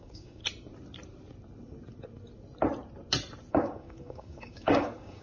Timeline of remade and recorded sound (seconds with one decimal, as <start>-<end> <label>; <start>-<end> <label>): 0.0-0.4 remade; 0.4-3.5 recorded; 3.5-5.2 remade